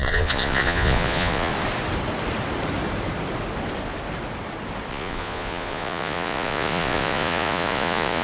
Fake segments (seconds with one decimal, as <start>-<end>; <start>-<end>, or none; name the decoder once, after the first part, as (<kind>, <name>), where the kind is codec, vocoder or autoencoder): 0.0-1.5 (vocoder, Vocos); 4.9-8.2